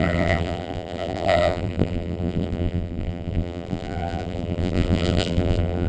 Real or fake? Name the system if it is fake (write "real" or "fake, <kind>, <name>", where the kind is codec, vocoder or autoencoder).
fake, vocoder, BigVGAN v2